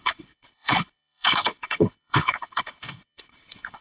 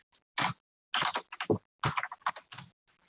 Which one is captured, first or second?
second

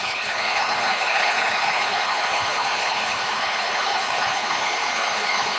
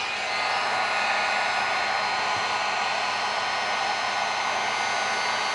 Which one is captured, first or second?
second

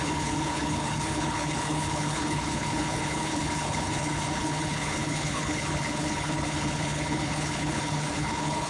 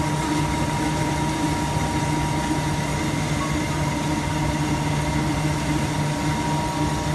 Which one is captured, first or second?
second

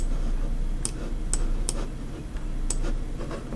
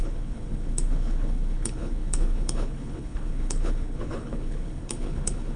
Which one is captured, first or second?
first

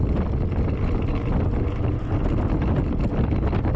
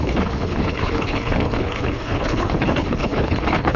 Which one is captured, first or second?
first